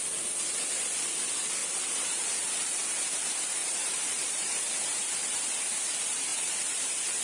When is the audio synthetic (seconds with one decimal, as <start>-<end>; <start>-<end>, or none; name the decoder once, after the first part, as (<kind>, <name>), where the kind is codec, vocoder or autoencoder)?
1.6-2.5 (vocoder, BigVGAN v2); 3.6-5.4; 6.3-6.8